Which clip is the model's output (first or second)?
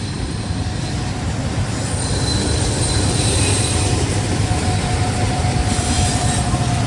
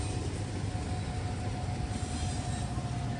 first